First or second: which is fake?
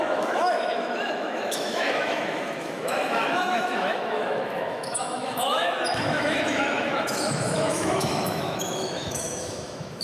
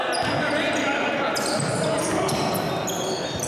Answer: first